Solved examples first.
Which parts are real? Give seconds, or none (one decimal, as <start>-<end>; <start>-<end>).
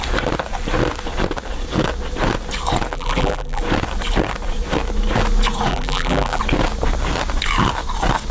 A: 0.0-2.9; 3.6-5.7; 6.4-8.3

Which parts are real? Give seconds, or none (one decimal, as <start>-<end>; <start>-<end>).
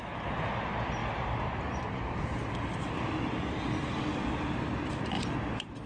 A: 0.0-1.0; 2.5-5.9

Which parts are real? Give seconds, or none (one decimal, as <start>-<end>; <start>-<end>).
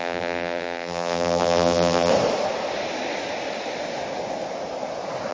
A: 2.1-5.3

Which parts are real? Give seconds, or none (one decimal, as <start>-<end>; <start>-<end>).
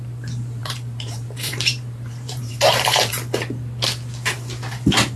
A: 0.0-0.6; 3.1-5.2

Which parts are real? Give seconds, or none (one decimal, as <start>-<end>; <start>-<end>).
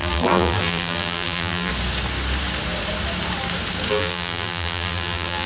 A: 1.7-3.9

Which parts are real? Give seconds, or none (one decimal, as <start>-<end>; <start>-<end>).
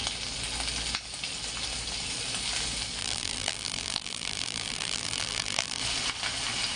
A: 0.0-3.0; 5.8-6.8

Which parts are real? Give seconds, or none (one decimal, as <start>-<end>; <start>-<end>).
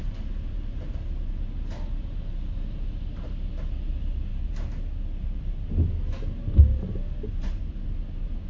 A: 0.0-8.5